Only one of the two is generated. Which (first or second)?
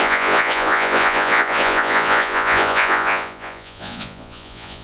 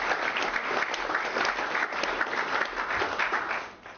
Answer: first